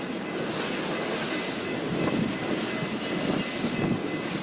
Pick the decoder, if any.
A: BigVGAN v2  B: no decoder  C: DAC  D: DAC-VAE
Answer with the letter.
B